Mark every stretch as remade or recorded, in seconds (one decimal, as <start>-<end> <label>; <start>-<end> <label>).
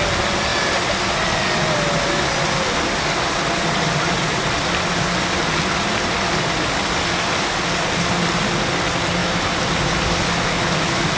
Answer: 0.0-11.2 recorded